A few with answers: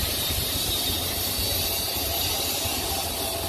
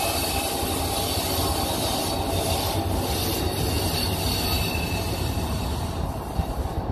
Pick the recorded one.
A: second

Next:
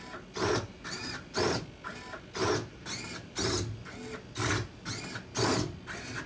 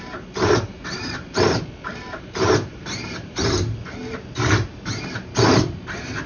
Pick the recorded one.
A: first